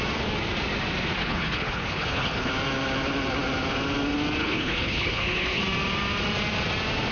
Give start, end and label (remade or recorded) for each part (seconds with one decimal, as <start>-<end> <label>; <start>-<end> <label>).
0.0-1.2 recorded; 1.2-2.5 remade; 2.5-4.4 recorded; 4.4-5.6 remade; 5.6-7.1 recorded